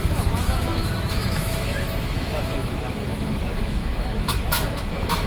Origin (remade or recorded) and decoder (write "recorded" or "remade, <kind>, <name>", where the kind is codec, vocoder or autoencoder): remade, autoencoder, DAC-VAE